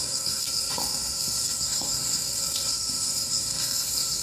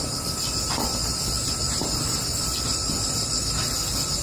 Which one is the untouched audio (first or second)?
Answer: second